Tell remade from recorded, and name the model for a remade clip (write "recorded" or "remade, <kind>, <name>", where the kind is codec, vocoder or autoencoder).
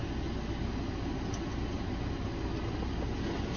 recorded